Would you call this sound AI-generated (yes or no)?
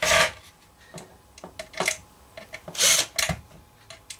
no